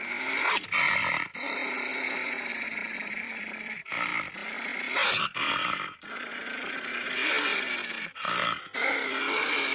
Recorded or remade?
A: recorded